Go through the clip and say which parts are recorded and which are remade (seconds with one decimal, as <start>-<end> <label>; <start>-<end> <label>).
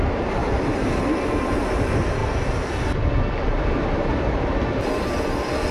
0.0-5.7 recorded